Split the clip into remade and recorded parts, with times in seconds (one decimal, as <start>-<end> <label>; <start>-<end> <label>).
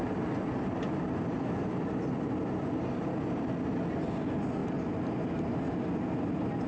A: 0.0-6.7 recorded